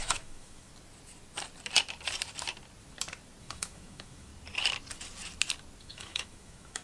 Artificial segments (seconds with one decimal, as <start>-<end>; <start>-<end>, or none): 0.0-0.7; 3.4-4.3; 5.8-6.8

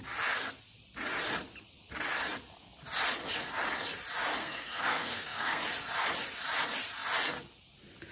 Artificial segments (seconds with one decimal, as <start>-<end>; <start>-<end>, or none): 4.4-5.6

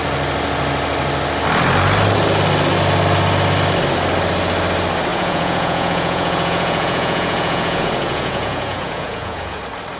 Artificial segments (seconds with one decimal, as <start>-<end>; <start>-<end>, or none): 5.1-9.6

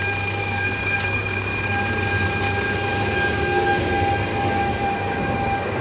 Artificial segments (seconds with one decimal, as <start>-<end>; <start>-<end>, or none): 0.4-1.6; 2.9-3.9; 4.3-5.8

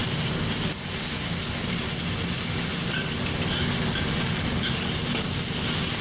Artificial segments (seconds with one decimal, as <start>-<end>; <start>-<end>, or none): none

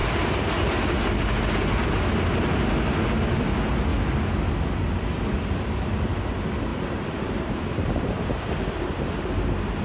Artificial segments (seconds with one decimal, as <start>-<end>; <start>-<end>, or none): 6.7-8.2